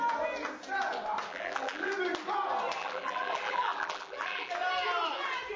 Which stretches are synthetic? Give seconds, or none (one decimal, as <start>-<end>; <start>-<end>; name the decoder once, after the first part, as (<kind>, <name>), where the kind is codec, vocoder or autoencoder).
1.3-1.9 (vocoder, BigVGAN v2); 2.8-4.5